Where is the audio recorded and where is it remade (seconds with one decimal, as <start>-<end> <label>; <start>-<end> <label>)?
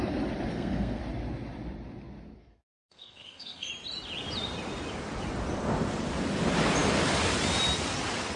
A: 0.0-0.5 recorded; 0.5-1.0 remade; 1.0-2.4 recorded; 2.4-3.7 remade; 3.7-8.4 recorded